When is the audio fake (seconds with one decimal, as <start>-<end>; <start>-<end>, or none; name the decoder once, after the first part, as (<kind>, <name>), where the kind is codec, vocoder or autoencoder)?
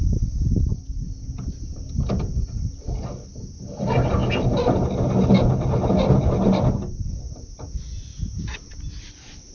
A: 8.1-8.7 (vocoder, BigVGAN v2)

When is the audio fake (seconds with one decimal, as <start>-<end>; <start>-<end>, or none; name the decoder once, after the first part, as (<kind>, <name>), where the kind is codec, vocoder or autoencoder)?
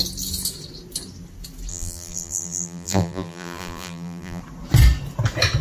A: 1.7-4.4 (vocoder, BigVGAN v2)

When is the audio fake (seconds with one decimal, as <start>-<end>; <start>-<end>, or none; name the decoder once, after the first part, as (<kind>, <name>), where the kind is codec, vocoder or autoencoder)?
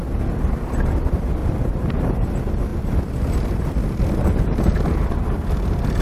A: 1.4-2.3 (vocoder, BigVGAN v2)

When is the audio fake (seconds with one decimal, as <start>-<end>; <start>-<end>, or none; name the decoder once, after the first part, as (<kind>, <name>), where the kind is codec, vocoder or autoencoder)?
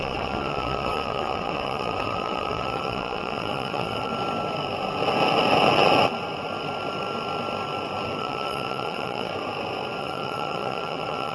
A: 0.0-4.1 (vocoder, WaveNeXt); 8.2-9.3; 10.0-11.3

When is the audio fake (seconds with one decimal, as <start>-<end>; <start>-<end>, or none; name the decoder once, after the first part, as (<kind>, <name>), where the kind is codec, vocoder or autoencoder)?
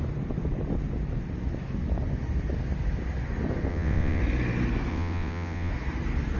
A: 3.7-4.2 (vocoder, WaveNeXt); 4.9-5.7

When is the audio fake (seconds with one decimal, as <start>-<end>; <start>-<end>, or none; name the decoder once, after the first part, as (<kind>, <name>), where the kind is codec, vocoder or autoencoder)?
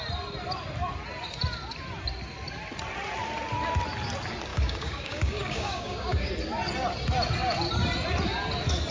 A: 4.5-6.3 (codec, DAC)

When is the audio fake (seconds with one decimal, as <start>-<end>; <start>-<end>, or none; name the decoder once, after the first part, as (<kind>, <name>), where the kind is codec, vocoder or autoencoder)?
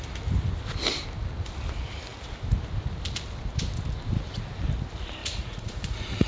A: 5.2-6.3 (vocoder, Vocos)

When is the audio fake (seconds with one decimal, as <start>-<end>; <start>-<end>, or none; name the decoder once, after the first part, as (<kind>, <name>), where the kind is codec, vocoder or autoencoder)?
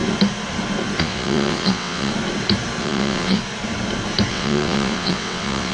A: 1.0-2.1 (vocoder, WaveNeXt); 2.8-3.4; 4.3-5.7